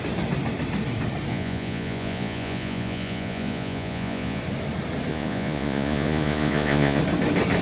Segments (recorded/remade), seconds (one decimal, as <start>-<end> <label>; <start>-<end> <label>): 0.0-1.3 recorded; 1.3-4.4 remade; 4.4-5.1 recorded; 5.1-7.0 remade; 7.0-7.6 recorded